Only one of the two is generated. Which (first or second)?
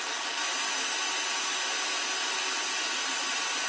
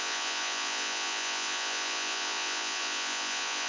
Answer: second